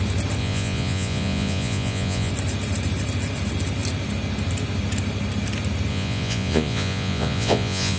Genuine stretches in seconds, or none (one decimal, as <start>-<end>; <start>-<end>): 0.0-0.4; 2.3-5.9